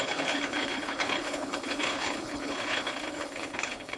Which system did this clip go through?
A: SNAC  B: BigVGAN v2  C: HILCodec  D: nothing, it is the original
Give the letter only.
C